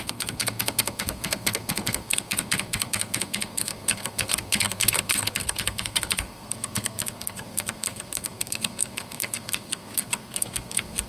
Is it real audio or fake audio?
fake